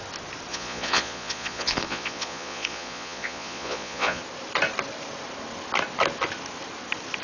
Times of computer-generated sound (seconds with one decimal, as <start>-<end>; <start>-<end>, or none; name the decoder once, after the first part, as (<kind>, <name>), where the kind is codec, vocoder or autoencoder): 0.5-4.2 (vocoder, Vocos)